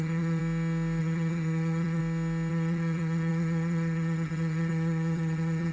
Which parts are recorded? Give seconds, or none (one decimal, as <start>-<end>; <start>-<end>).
0.4-1.0; 2.0-2.5